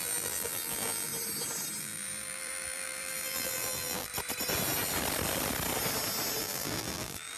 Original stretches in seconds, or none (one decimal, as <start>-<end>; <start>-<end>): 1.1-1.8; 4.1-6.4